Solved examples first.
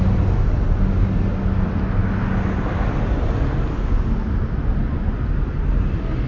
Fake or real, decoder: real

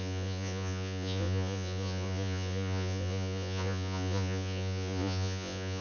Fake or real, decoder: fake, vocoder, Vocos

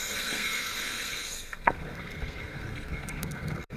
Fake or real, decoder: fake, codec, SNAC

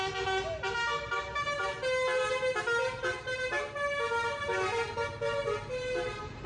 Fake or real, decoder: real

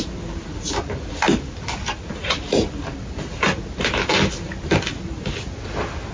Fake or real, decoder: real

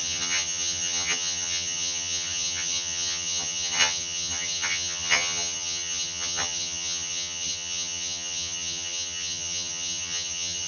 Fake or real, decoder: fake, vocoder, HiFi-GAN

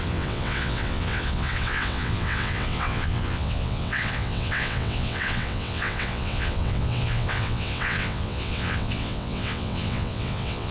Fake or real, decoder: fake, vocoder, WaveNeXt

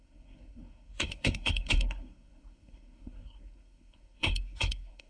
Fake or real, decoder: fake, codec, SNAC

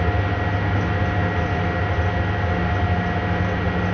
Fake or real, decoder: real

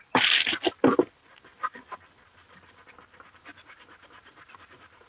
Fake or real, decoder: real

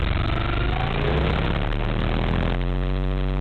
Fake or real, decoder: real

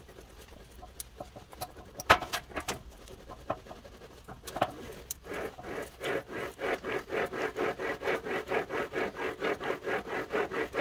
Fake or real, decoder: real